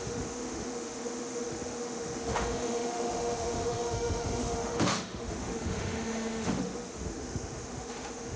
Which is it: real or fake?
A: fake